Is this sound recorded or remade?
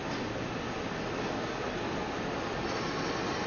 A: recorded